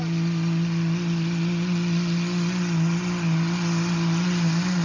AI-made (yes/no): no